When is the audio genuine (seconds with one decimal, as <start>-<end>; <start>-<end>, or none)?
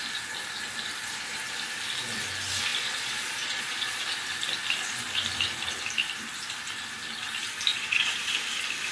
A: 0.0-2.7; 4.0-7.7; 8.3-8.9